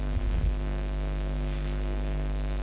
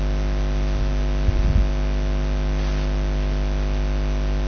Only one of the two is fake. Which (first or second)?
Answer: first